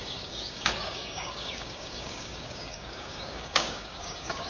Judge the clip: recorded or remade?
remade